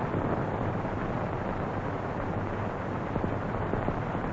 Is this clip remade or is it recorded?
recorded